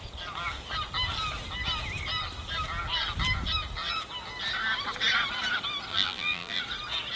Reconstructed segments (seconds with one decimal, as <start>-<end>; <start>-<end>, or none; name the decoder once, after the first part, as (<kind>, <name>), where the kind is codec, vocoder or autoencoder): 5.9-6.6 (vocoder, BigVGAN v2)